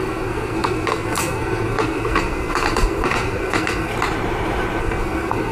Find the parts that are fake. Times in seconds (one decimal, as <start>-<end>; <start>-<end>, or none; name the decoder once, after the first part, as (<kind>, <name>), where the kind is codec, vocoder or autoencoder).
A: 0.0-3.9 (codec, SNAC); 4.8-5.5